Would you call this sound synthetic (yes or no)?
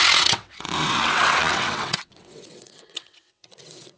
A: yes